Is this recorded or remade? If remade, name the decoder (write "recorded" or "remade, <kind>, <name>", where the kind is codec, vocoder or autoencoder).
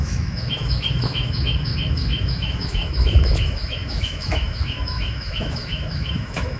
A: remade, autoencoder, DAC-VAE